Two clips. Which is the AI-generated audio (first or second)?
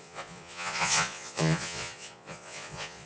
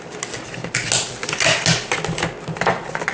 first